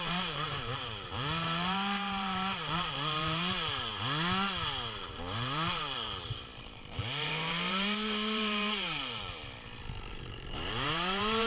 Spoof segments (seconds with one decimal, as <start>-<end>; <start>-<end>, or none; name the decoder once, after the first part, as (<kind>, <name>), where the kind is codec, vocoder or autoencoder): 0.0-3.9 (vocoder, BigVGAN v2); 5.0-9.4; 10.1-11.5